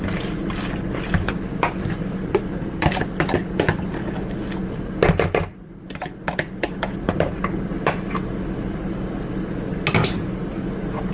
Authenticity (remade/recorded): recorded